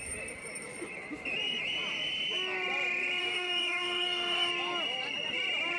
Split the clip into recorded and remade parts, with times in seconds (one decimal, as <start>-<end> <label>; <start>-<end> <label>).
0.0-3.2 recorded; 3.2-4.5 remade; 4.5-5.8 recorded